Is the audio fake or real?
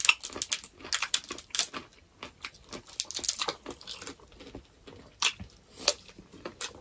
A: real